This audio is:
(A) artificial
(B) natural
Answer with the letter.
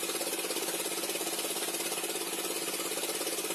B